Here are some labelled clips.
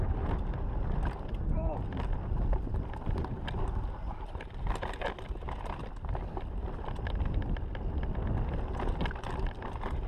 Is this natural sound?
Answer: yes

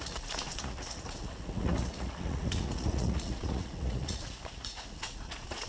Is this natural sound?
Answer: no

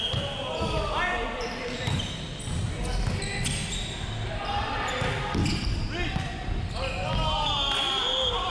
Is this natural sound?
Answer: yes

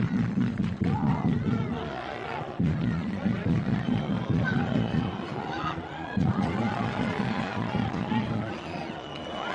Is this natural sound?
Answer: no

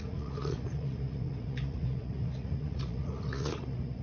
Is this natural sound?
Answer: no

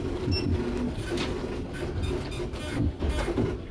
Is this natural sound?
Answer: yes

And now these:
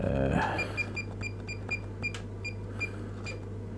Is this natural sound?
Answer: yes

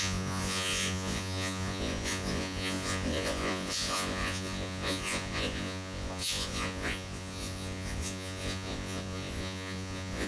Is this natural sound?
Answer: no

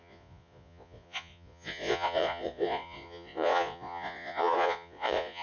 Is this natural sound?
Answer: no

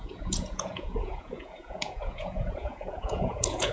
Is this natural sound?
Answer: no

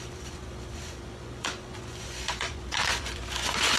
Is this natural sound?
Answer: no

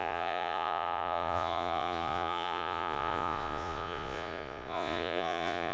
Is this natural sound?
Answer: no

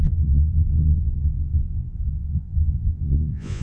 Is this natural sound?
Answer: no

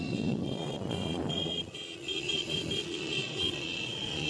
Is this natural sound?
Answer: no